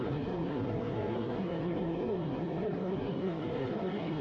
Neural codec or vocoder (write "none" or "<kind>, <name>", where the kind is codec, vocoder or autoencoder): codec, SNAC